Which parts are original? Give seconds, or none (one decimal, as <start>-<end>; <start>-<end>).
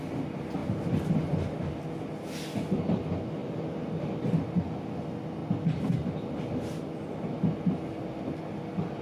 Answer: 0.0-5.4; 6.1-9.0